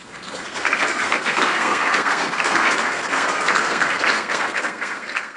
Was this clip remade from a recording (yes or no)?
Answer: yes